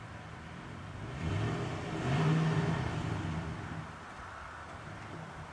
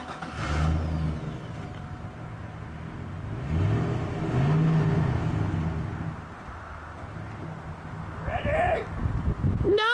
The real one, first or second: second